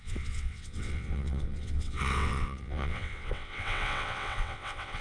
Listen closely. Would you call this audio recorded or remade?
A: remade